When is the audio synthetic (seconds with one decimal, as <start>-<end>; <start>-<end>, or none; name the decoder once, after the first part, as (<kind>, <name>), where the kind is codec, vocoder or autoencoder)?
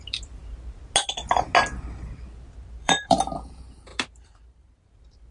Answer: 0.0-0.4 (vocoder, BigVGAN v2); 2.8-5.3